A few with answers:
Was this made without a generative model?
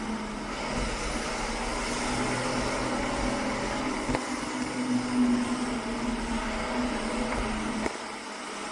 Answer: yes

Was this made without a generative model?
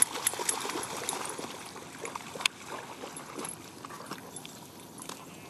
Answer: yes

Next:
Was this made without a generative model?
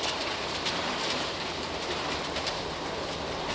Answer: no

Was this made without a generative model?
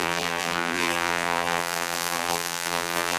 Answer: no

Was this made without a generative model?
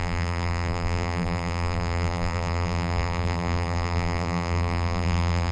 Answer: no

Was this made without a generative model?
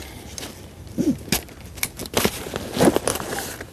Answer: yes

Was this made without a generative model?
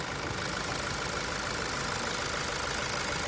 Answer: yes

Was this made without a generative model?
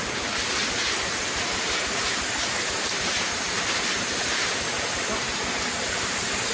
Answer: no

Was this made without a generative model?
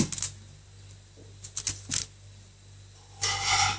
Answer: yes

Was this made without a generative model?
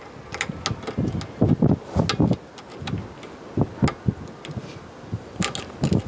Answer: yes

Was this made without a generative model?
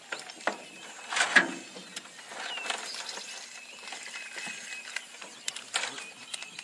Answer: yes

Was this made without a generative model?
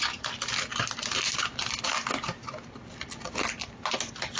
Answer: yes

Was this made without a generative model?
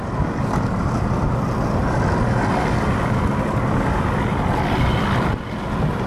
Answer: yes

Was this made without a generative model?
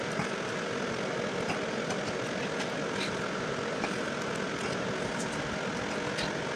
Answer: yes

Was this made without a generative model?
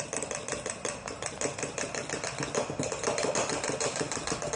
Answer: yes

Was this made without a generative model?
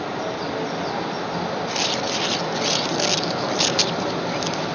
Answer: yes